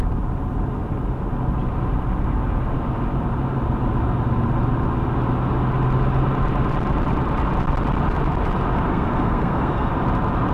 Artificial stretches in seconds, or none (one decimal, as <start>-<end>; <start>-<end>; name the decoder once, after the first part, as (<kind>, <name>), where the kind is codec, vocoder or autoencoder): 8.9-9.9 (codec, SNAC)